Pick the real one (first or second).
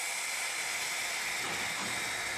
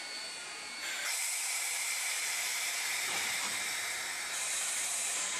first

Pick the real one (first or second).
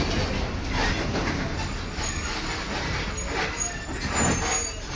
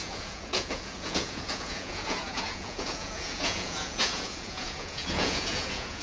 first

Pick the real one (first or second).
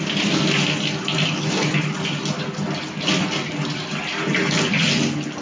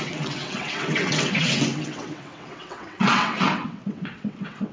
first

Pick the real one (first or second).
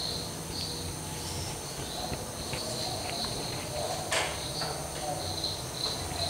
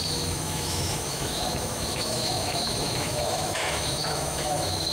first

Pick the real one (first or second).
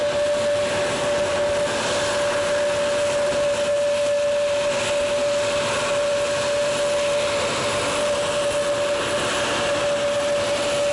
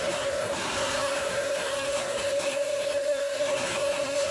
first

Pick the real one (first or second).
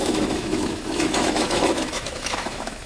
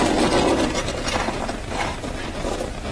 second